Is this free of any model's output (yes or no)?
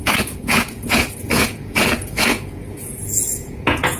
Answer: no